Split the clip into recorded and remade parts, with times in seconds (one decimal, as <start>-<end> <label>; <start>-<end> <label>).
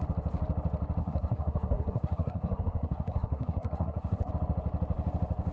0.0-1.0 recorded; 1.0-4.3 remade; 4.3-5.5 recorded